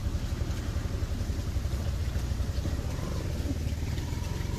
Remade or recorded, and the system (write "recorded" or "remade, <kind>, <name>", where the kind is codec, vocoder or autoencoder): recorded